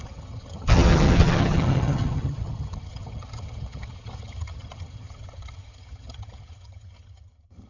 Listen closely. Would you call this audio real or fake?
fake